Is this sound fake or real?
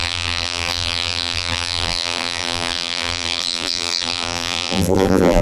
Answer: fake